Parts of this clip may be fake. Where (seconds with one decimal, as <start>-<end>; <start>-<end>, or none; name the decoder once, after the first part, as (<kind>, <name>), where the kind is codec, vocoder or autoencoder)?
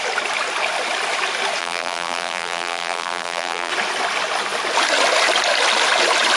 1.6-3.7 (vocoder, BigVGAN v2)